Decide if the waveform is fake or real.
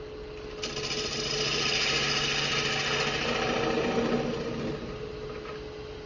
real